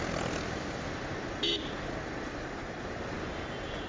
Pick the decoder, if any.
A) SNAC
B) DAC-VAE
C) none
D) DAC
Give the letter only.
C